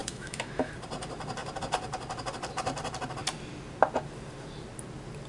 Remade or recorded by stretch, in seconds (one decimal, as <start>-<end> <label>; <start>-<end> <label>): 0.0-0.7 remade; 0.7-5.3 recorded